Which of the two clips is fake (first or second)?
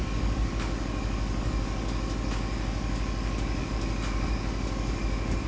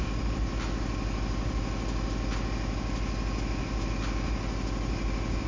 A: first